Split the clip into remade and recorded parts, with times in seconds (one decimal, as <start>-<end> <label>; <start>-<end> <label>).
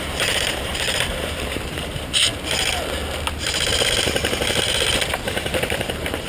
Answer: 0.0-2.3 remade; 2.3-5.2 recorded; 5.2-6.3 remade